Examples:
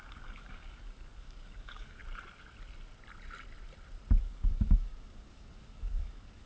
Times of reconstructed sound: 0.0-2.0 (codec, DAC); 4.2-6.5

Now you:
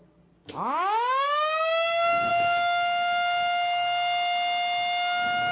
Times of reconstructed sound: 0.4-2.3 (codec, DAC)

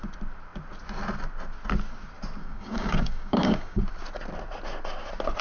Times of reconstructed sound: 2.4-3.8 (codec, DAC)

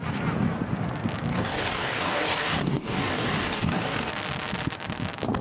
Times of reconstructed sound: 1.3-4.1 (codec, DAC)